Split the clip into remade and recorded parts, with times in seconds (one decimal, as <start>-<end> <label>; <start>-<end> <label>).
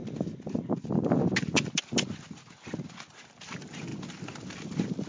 0.0-5.1 recorded